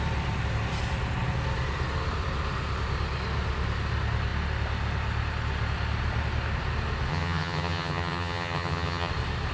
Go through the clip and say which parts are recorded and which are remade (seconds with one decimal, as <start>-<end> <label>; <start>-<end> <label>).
0.0-7.1 recorded; 7.1-9.1 remade; 9.1-9.5 recorded